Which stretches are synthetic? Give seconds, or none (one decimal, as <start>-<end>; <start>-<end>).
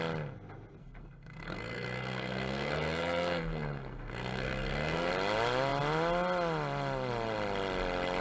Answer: 0.8-5.1